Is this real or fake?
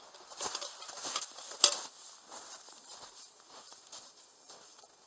real